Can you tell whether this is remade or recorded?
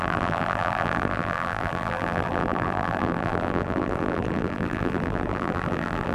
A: remade